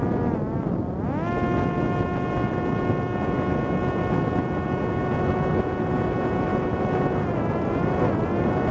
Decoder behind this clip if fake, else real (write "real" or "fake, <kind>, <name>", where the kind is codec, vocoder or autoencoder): real